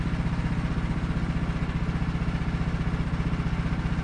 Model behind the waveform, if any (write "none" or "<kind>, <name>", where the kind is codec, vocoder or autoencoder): none